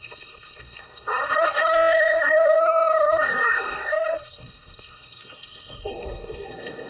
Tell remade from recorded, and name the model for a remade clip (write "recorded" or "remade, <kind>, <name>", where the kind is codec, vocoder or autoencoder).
remade, codec, SNAC